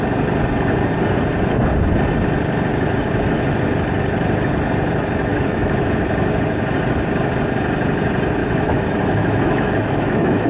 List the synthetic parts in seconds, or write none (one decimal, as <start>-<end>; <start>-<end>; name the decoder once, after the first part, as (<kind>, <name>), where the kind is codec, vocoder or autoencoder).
5.3-6.0 (autoencoder, DAC-VAE); 8.4-10.5